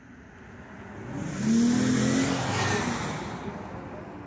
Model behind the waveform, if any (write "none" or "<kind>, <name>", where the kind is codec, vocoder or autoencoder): none